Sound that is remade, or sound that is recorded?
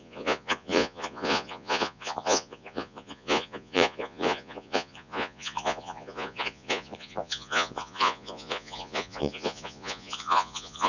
remade